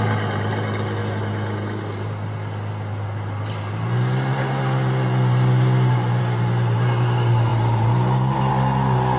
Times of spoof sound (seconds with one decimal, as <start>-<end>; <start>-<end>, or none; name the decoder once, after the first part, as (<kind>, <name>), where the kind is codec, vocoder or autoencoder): none